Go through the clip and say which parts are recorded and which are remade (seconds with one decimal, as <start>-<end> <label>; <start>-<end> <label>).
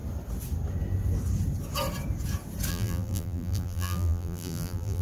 0.0-2.7 recorded; 2.7-5.0 remade